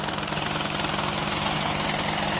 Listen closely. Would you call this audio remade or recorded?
recorded